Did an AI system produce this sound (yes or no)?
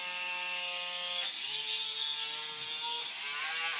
no